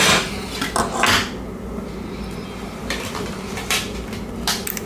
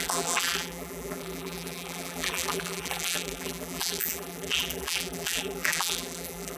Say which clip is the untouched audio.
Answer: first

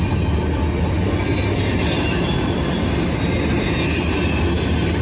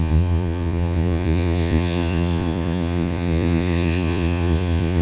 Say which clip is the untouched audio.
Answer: first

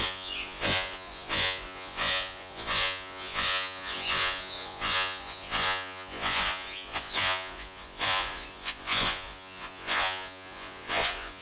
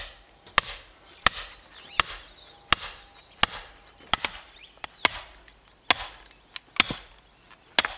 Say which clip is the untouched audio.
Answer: second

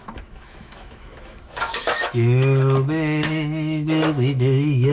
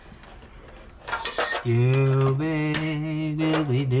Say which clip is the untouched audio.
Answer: second